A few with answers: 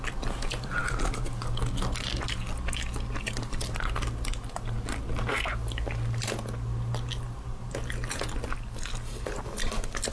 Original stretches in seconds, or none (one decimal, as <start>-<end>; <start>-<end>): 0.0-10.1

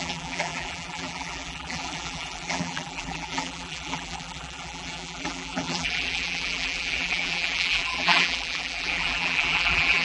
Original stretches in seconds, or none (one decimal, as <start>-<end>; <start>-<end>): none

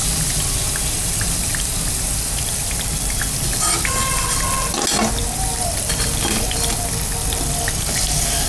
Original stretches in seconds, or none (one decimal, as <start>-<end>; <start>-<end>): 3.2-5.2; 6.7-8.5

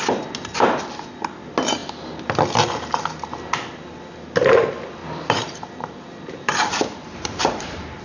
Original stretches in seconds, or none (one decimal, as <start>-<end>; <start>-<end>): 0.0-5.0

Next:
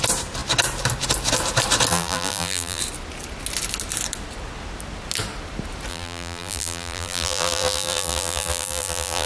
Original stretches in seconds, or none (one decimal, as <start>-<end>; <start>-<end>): 0.0-1.9; 2.8-5.9

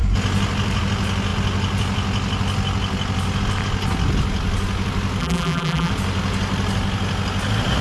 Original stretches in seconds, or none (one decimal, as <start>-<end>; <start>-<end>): 0.0-5.2; 5.9-7.8

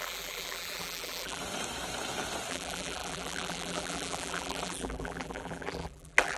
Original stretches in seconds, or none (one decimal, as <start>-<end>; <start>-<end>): 1.4-2.5

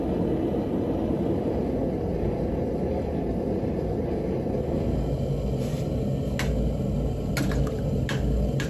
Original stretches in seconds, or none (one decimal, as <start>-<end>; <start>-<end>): 0.0-8.7